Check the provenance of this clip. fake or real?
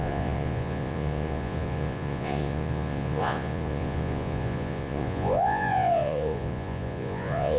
fake